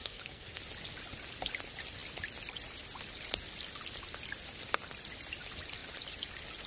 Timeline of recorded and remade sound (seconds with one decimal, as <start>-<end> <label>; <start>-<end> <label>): 0.0-0.6 remade; 0.6-6.7 recorded